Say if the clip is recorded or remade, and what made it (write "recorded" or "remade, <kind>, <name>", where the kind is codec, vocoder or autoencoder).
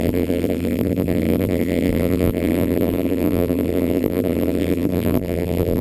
remade, vocoder, BigVGAN v2